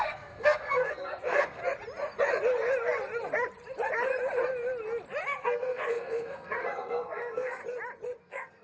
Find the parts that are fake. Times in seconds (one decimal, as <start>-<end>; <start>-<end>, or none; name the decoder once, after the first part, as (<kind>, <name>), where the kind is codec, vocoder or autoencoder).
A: 0.0-1.6 (codec, SNAC); 5.4-7.6; 8.2-8.6